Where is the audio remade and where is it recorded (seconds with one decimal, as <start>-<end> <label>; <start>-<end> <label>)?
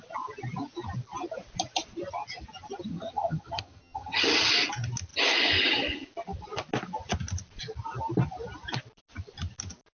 0.0-2.9 recorded; 2.9-4.5 remade; 4.5-10.0 recorded